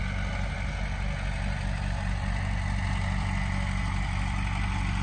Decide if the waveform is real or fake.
real